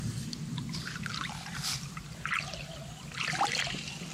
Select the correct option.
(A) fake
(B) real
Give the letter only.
B